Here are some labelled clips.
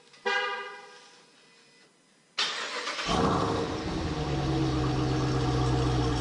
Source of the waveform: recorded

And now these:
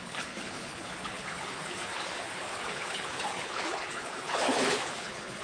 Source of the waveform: remade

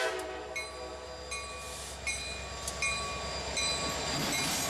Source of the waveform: recorded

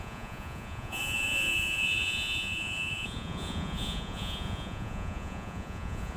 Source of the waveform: remade